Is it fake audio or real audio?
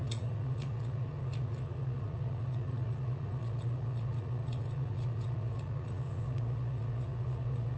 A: fake